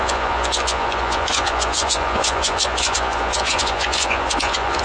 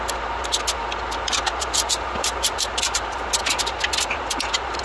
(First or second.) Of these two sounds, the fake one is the first